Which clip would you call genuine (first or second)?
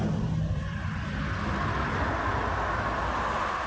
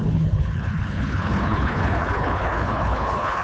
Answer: first